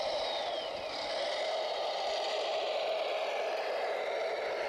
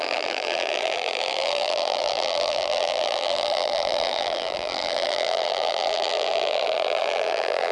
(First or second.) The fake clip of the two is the second